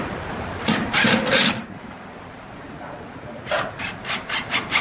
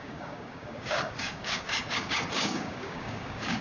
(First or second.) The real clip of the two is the first